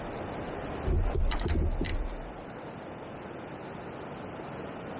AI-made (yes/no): no